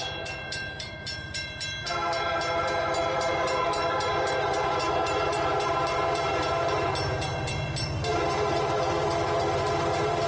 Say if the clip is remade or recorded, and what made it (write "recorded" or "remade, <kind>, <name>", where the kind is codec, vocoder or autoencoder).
remade, vocoder, BigVGAN v2